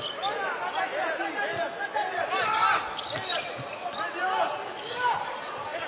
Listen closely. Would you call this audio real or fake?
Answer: real